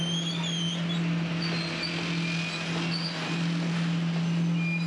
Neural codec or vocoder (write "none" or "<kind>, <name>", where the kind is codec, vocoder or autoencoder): none